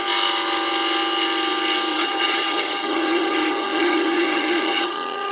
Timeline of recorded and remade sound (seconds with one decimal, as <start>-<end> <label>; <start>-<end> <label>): 0.0-1.9 recorded; 1.9-5.3 remade